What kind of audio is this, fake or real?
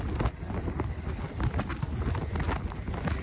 real